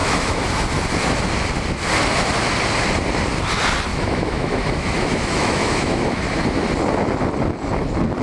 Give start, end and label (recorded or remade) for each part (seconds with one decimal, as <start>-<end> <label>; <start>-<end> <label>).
0.0-0.5 remade; 0.5-3.9 recorded; 3.9-6.2 remade; 6.2-8.2 recorded